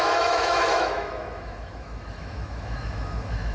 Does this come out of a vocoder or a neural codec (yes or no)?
yes